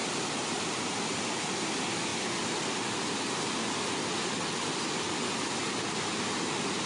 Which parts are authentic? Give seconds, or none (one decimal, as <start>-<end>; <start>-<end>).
1.0-6.9